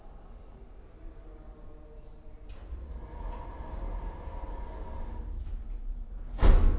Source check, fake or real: real